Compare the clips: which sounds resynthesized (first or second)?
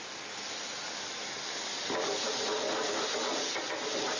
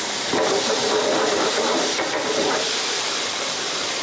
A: second